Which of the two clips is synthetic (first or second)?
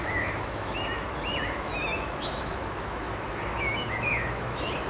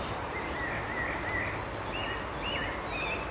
first